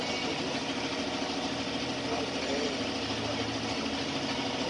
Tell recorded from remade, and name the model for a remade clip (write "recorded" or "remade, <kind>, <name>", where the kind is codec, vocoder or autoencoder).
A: recorded